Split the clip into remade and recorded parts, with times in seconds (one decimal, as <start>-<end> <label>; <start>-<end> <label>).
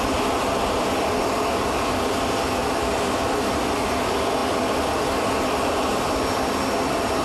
0.0-2.6 recorded; 2.6-3.2 remade; 3.2-4.4 recorded; 4.4-5.4 remade; 5.4-7.2 recorded